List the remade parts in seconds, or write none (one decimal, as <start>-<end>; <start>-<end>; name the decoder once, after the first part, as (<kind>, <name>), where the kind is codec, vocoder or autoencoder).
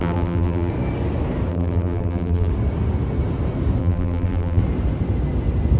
0.0-0.7 (vocoder, BigVGAN v2); 1.5-2.5; 3.8-4.6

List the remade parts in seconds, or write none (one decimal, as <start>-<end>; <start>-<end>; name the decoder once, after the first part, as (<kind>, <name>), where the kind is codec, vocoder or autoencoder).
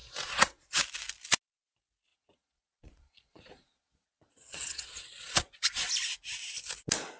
0.0-0.8 (vocoder, Vocos); 2.1-5.9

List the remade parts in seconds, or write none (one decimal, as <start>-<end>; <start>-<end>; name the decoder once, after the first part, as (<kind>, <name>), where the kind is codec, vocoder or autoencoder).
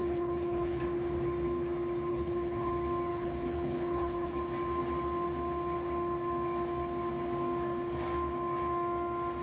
0.0-0.8 (codec, HILCodec); 2.1-2.7; 3.1-4.4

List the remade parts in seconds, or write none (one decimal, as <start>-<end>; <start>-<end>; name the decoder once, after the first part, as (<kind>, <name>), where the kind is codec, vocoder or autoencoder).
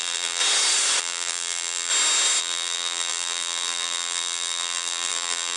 0.0-0.4 (vocoder, BigVGAN v2); 1.0-1.9; 2.4-5.6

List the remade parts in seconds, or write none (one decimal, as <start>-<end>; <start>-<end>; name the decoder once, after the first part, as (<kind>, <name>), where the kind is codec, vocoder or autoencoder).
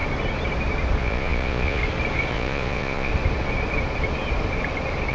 1.0-1.8 (vocoder, Vocos); 2.3-3.1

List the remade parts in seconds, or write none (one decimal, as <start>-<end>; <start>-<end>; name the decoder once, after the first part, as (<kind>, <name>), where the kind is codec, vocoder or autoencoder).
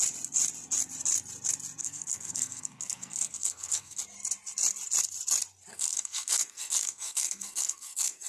1.8-4.0 (codec, SNAC); 5.7-8.3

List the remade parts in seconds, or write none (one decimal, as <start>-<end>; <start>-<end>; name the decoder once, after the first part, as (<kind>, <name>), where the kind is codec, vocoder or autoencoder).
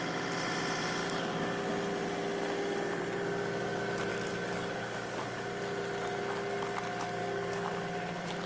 1.0-1.6 (codec, DAC); 4.1-5.5; 7.2-7.7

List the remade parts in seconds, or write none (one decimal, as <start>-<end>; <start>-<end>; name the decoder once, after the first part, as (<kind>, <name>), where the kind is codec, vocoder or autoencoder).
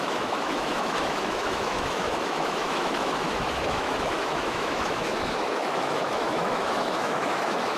0.0-7.8 (autoencoder, DAC-VAE)